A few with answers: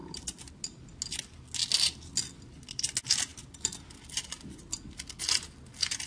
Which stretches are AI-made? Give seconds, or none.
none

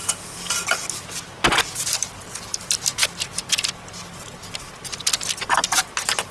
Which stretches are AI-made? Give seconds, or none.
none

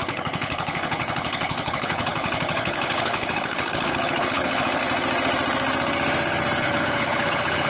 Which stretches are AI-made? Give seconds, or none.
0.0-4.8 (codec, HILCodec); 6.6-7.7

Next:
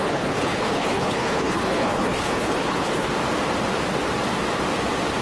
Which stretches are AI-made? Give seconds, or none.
0.0-3.1 (codec, HILCodec)

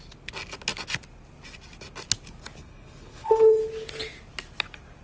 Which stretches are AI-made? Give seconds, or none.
2.6-3.6 (codec, HILCodec)